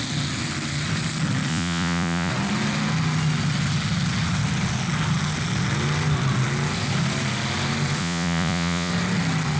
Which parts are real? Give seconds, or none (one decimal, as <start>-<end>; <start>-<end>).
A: 0.0-1.5; 2.3-8.0; 8.9-9.6